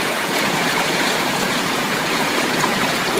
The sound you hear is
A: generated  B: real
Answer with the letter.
A